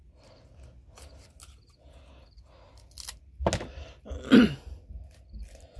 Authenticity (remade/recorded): recorded